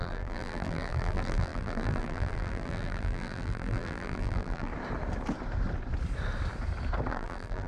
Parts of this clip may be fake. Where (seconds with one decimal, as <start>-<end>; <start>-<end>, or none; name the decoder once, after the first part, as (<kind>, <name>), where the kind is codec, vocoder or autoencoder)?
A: 0.0-4.7 (vocoder, BigVGAN v2); 7.1-7.7